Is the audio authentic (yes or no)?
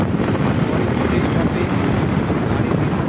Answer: yes